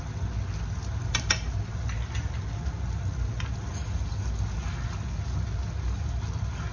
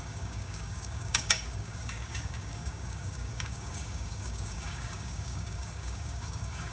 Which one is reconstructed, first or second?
second